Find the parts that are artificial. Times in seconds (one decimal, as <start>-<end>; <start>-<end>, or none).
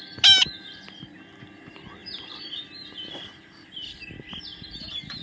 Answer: 2.0-4.1